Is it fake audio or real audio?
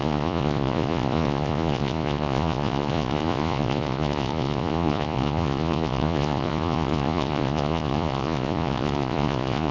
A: fake